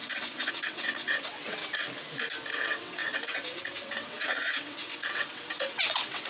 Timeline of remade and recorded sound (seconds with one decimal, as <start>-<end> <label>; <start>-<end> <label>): 0.0-1.6 remade; 1.6-2.5 recorded; 2.5-6.3 remade